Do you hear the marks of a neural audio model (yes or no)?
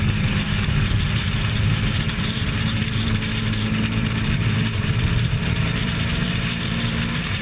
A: yes